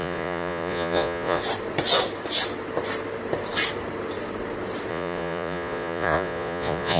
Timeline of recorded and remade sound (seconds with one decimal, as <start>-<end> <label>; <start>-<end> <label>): 0.0-1.4 remade; 1.4-4.9 recorded; 4.9-7.0 remade